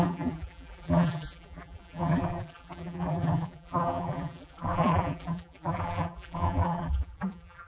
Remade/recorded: remade